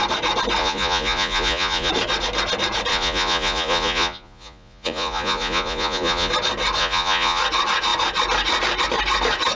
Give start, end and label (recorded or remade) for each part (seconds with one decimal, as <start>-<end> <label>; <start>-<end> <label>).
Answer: 0.0-0.6 recorded; 0.6-1.9 remade; 1.9-2.9 recorded; 2.9-6.3 remade; 6.3-6.8 recorded; 6.8-7.4 remade; 7.4-9.5 recorded